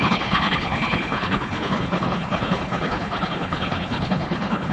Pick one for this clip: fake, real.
fake